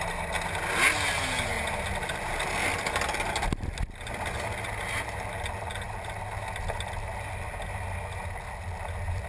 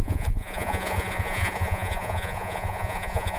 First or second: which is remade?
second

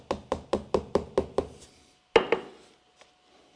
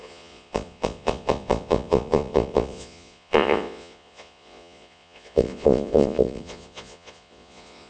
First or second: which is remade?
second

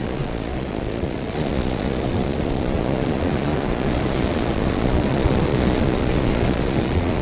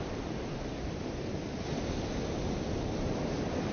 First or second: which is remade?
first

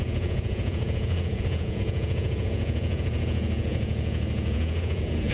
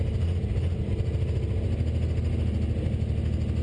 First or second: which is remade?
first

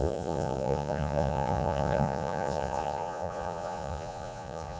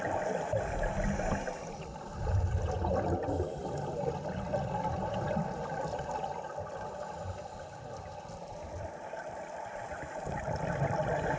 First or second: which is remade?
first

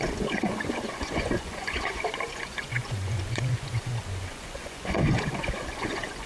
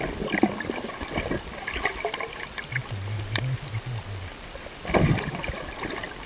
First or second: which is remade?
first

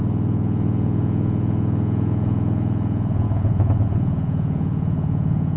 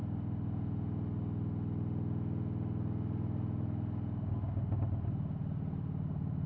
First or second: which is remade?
first